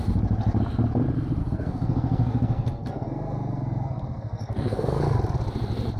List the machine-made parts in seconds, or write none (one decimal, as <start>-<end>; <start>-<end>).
1.4-5.0